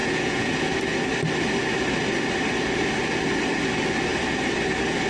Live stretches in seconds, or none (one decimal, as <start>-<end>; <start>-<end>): 0.7-5.1